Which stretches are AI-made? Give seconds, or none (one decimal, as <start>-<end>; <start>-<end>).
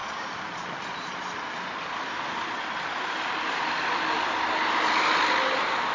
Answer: none